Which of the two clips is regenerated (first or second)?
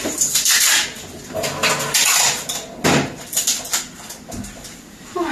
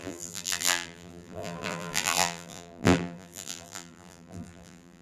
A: second